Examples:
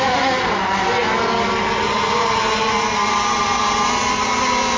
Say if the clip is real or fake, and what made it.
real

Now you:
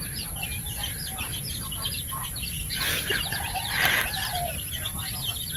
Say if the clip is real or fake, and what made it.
fake, vocoder, BigVGAN v2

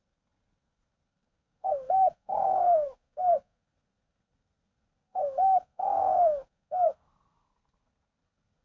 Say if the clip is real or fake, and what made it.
fake, codec, SNAC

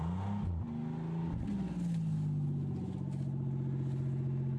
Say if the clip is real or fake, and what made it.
real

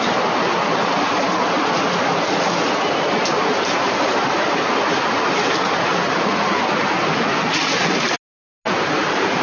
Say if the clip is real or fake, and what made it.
real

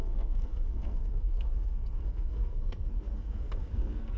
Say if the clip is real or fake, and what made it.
fake, codec, SNAC